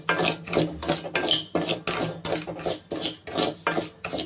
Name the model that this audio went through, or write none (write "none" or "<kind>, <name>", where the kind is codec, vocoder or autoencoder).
none